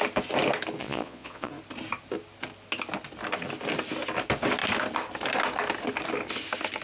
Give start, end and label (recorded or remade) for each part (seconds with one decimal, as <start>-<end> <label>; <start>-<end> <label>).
0.0-0.8 recorded; 0.8-1.5 remade; 1.5-6.8 recorded